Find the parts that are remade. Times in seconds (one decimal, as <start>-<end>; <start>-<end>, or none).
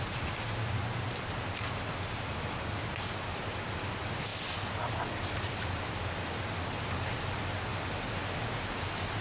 0.0-4.3; 5.2-7.7